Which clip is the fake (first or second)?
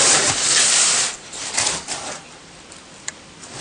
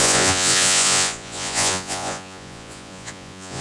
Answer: second